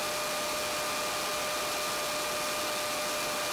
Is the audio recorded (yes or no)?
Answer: yes